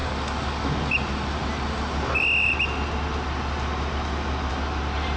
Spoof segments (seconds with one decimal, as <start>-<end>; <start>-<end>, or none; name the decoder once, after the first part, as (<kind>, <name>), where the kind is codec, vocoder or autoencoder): 0.0-0.7 (codec, DAC)